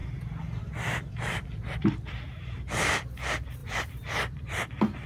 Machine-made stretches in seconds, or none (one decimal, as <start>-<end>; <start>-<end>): 0.6-5.1